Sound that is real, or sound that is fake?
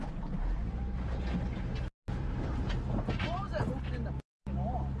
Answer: real